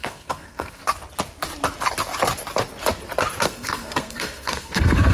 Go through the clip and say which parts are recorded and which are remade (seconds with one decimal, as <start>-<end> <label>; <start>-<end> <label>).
0.0-0.8 remade; 0.8-3.4 recorded; 3.4-5.1 remade